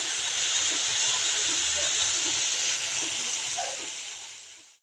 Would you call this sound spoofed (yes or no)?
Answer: no